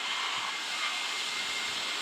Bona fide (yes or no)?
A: yes